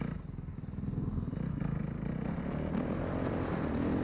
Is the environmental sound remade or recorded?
recorded